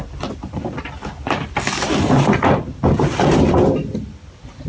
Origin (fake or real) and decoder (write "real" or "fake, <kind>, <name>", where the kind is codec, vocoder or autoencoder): real